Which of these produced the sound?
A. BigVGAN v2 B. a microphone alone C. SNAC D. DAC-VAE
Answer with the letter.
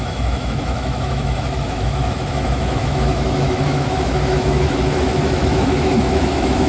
D